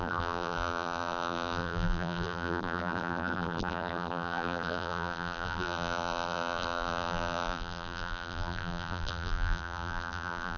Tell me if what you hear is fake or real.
fake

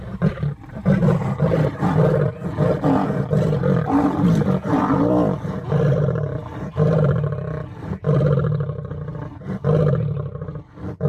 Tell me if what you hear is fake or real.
real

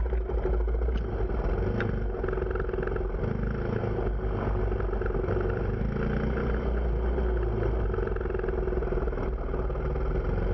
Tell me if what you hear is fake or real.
real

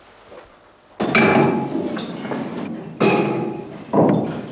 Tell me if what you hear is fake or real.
real